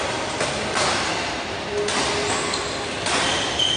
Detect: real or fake real